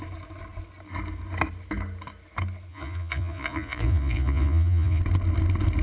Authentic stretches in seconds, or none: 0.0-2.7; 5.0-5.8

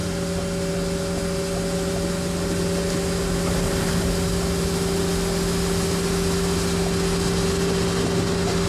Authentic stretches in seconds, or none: 0.7-8.7